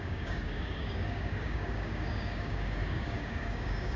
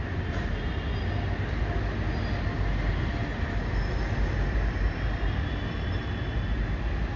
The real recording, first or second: second